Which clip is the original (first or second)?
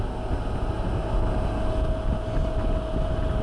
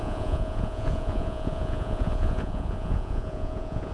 first